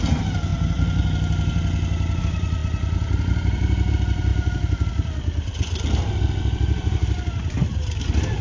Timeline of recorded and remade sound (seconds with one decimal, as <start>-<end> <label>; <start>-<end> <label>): 0.0-0.5 remade; 0.5-2.2 recorded; 2.2-2.6 remade; 2.6-3.9 recorded; 3.9-8.4 remade